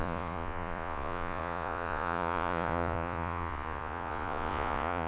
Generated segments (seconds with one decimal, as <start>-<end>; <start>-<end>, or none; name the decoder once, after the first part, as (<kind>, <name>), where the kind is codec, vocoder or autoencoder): 0.0-5.1 (vocoder, Vocos)